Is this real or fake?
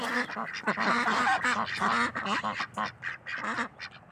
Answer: real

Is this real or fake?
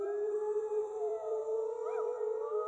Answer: fake